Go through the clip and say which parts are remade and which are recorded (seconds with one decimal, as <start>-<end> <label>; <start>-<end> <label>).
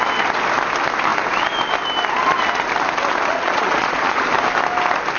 0.0-3.3 recorded; 3.3-4.2 remade; 4.2-5.2 recorded